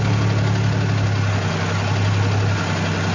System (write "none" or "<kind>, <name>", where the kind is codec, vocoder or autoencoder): none